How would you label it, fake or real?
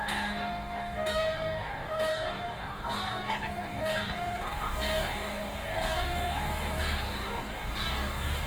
fake